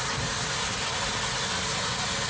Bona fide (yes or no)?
yes